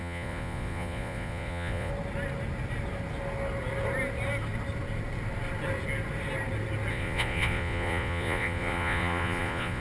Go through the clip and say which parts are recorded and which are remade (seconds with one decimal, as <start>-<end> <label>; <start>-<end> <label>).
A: 0.0-1.9 remade; 1.9-6.9 recorded; 6.9-9.8 remade